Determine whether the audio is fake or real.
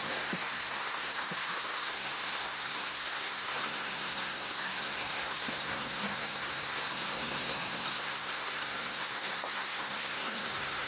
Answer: fake